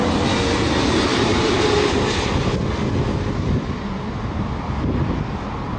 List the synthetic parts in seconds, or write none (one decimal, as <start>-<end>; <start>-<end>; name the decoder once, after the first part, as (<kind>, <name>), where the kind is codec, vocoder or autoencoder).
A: 1.1-2.3 (vocoder, BigVGAN v2)